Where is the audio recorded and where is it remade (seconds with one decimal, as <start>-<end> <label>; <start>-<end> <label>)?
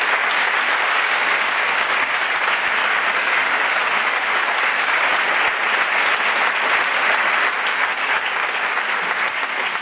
0.0-0.7 recorded; 0.7-2.3 remade; 2.3-2.8 recorded; 2.8-5.1 remade; 5.1-7.7 recorded; 7.7-8.6 remade; 8.6-9.8 recorded